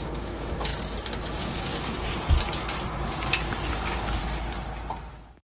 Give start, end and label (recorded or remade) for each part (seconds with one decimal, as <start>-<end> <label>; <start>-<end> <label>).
0.0-0.7 remade; 0.7-1.3 recorded; 1.3-2.1 remade; 2.1-3.7 recorded; 3.7-4.2 remade; 4.2-5.1 recorded; 5.1-5.5 remade